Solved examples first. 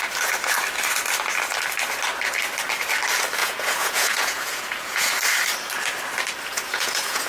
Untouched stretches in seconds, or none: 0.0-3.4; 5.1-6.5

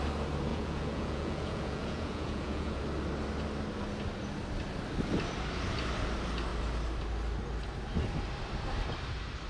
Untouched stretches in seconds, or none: 0.0-0.5; 2.8-9.5

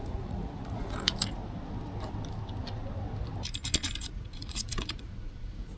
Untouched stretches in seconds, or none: 1.4-4.0

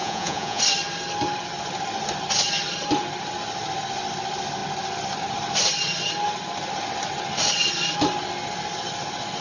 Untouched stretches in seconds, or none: 0.6-9.4

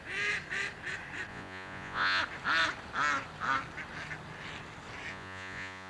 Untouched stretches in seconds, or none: 0.0-1.3; 2.2-5.1

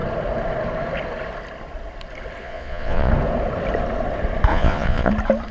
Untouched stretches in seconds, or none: 0.0-2.4; 3.1-4.5; 5.1-5.5

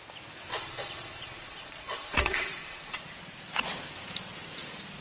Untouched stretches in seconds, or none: 0.0-0.5; 3.0-5.0

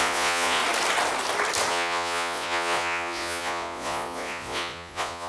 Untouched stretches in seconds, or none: 0.6-1.7